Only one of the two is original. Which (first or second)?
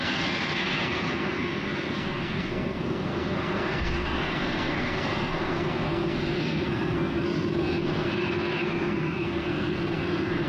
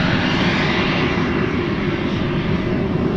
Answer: second